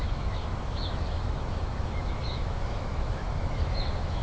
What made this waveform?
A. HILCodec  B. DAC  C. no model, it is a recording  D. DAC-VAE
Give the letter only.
D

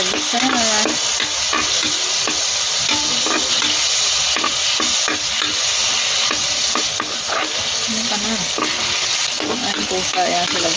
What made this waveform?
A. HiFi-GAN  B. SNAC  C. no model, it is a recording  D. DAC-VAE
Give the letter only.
C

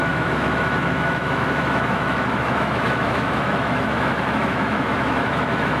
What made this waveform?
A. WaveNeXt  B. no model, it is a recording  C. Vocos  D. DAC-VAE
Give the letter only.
D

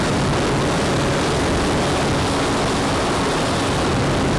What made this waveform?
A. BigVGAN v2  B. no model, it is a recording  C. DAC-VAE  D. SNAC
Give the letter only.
B